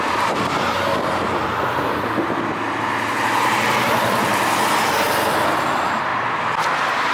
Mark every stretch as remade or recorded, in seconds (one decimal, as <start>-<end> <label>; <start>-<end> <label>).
0.0-1.4 remade; 1.4-3.9 recorded; 3.9-6.1 remade; 6.1-6.6 recorded; 6.6-7.1 remade